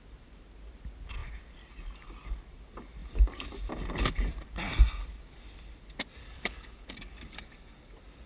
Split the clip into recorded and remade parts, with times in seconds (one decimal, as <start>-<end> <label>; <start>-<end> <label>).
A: 0.0-6.2 recorded; 6.2-7.9 remade; 7.9-8.3 recorded